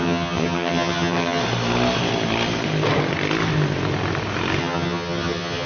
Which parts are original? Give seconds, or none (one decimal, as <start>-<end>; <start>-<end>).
1.4-4.6